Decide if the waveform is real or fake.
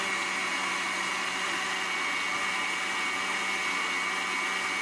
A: real